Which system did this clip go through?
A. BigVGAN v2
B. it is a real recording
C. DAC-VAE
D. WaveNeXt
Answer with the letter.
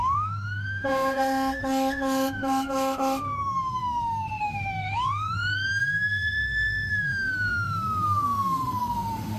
C